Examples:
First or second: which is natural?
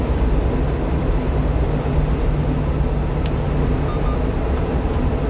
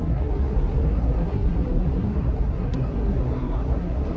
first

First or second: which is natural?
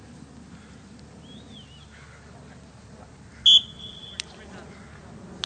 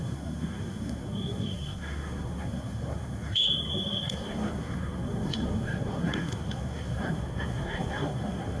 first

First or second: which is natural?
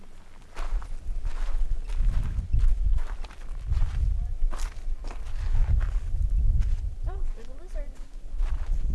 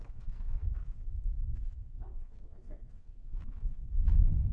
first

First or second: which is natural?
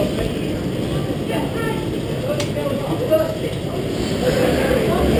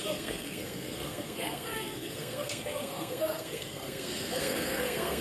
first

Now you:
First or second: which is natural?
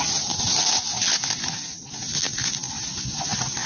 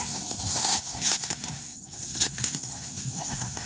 first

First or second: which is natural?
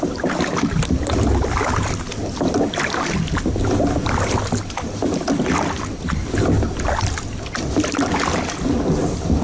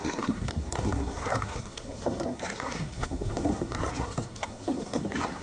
first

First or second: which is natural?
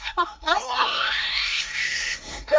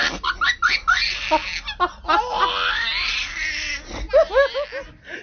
second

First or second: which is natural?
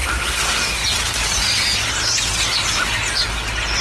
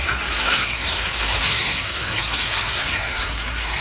first